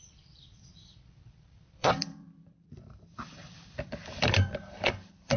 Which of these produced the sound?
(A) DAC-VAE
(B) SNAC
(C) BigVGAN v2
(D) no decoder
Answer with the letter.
C